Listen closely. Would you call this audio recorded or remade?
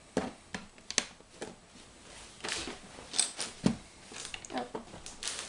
recorded